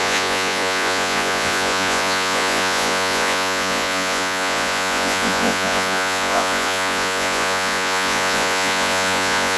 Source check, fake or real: fake